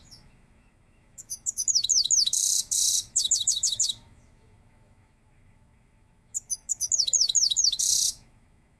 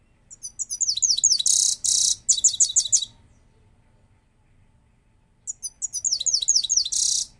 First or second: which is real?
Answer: second